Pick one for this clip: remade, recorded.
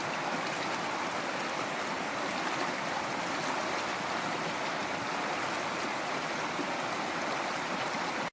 recorded